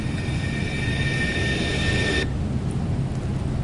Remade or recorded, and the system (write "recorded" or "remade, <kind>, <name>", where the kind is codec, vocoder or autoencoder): recorded